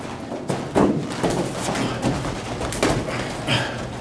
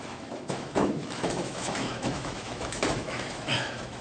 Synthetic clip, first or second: second